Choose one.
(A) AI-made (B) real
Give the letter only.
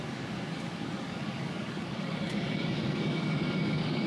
A